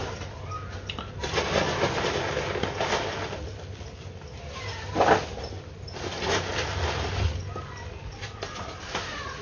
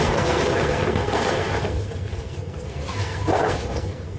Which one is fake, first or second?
second